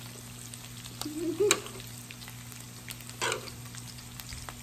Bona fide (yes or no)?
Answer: yes